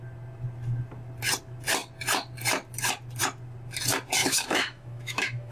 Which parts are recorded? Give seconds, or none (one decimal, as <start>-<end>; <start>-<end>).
0.0-4.2